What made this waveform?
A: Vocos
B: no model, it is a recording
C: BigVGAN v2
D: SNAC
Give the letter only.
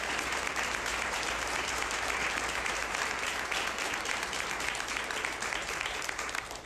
C